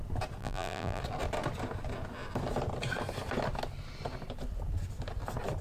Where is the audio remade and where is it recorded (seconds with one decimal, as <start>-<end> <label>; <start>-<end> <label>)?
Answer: 0.0-0.4 recorded; 0.4-1.0 remade; 1.0-5.6 recorded